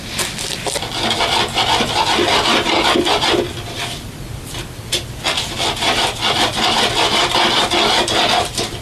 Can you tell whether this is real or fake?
real